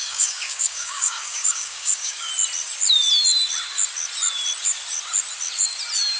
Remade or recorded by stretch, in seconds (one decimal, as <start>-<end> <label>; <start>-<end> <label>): 0.0-2.3 remade; 2.3-6.2 recorded